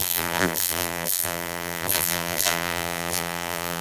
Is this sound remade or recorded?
remade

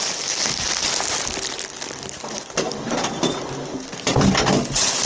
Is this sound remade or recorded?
recorded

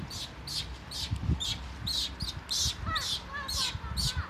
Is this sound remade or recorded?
recorded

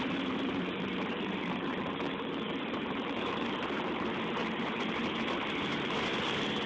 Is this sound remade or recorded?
remade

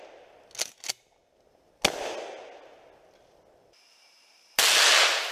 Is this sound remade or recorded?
recorded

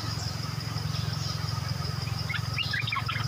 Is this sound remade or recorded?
recorded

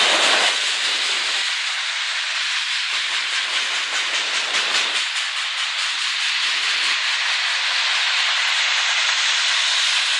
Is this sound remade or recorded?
recorded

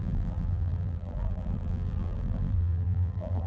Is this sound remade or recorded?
remade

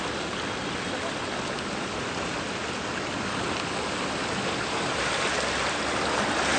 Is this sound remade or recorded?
recorded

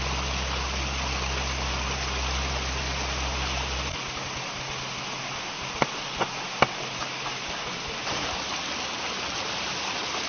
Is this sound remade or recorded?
recorded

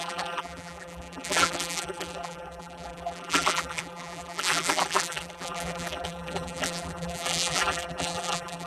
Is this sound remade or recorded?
remade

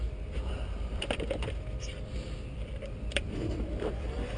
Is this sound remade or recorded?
remade